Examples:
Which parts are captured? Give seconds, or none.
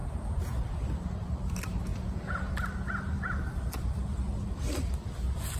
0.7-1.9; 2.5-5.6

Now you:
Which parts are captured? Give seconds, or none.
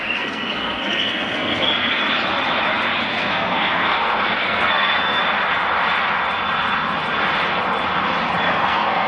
2.0-3.0; 5.2-8.5